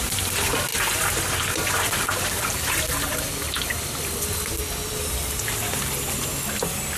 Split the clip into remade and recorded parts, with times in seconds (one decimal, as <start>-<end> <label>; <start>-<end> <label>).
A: 0.0-7.0 recorded